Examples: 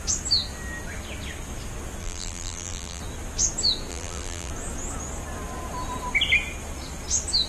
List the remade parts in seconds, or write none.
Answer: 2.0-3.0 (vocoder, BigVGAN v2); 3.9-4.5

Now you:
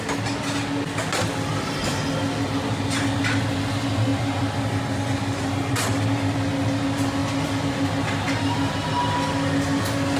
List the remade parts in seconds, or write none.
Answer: none

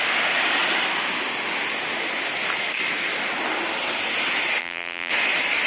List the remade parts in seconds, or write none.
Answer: 4.6-5.1 (vocoder, BigVGAN v2)

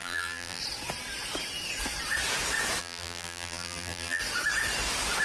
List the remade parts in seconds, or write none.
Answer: 0.0-0.6 (vocoder, BigVGAN v2); 2.8-4.2